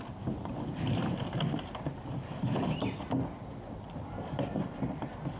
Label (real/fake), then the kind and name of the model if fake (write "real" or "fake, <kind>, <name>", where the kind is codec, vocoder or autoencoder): real